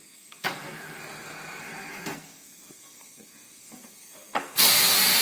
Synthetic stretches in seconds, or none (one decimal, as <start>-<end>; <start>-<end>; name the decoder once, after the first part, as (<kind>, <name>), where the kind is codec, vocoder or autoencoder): 0.0-5.2 (codec, SNAC)